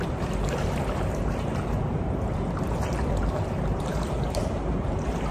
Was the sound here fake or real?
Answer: fake